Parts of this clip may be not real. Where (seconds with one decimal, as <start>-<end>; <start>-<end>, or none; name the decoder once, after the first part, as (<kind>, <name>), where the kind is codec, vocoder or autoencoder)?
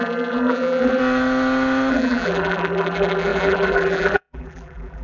0.0-1.0 (vocoder, BigVGAN v2); 1.9-5.0